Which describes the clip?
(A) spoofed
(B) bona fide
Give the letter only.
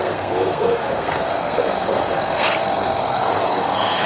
A